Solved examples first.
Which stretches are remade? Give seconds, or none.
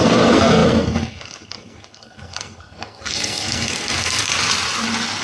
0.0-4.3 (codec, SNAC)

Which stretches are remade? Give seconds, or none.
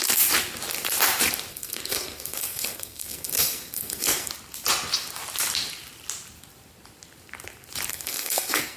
1.5-4.3 (codec, SNAC); 7.9-8.8